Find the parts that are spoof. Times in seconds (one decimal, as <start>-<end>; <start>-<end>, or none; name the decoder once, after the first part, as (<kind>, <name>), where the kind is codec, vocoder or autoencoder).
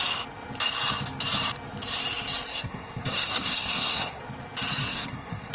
2.5-4.2 (codec, SNAC); 4.8-5.5